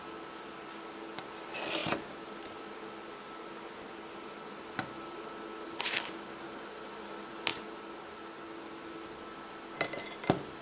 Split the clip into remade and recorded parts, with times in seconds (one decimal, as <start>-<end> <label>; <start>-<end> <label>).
0.0-10.6 recorded